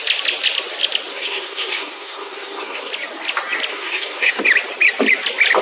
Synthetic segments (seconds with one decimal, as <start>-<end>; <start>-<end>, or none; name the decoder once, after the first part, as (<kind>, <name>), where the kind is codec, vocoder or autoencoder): 1.1-2.9 (codec, SNAC); 3.7-4.4